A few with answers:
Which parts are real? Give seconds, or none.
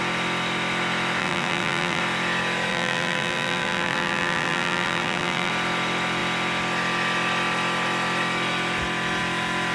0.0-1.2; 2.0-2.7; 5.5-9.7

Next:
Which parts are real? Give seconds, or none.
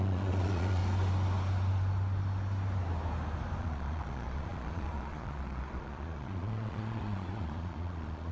0.8-3.6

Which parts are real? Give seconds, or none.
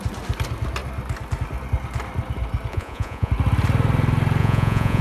0.0-2.7; 3.3-4.4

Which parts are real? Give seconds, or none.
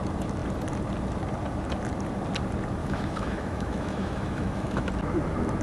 0.0-2.8; 4.9-5.6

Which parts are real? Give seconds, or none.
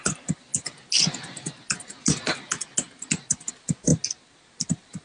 0.5-3.5; 3.9-4.6